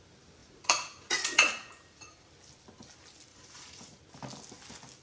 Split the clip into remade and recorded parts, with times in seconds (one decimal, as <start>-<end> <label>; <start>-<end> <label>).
0.0-0.4 recorded; 0.4-2.3 remade; 2.3-3.3 recorded; 3.3-4.0 remade; 4.0-5.0 recorded